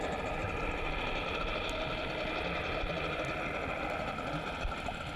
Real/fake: real